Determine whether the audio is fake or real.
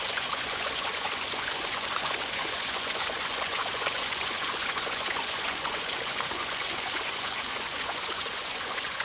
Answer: fake